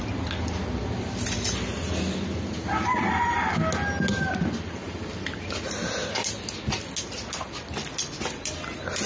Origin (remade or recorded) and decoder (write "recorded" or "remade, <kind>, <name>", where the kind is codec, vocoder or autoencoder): recorded